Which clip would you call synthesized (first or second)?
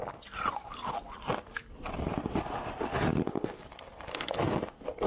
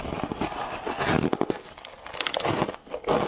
first